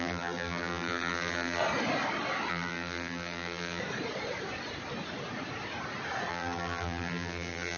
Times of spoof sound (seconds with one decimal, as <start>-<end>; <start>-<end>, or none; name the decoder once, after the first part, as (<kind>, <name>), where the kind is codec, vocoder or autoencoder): 0.0-1.6 (vocoder, BigVGAN v2); 2.5-3.8; 6.3-7.8